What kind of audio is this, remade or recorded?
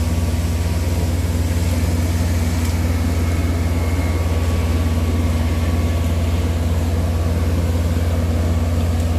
recorded